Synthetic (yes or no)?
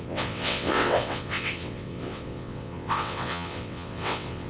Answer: yes